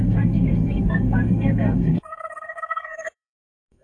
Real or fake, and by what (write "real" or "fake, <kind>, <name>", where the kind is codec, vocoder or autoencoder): fake, codec, SNAC